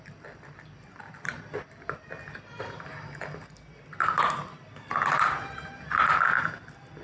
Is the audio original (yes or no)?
yes